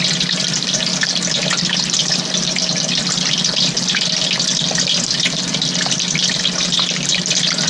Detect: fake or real real